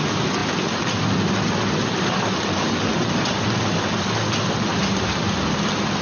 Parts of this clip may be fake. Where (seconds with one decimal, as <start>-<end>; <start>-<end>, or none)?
none